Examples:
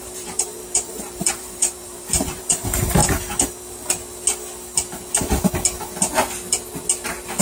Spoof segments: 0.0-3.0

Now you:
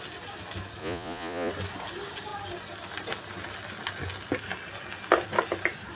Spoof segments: 0.8-1.5

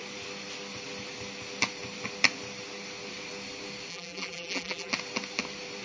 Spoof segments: 3.9-4.9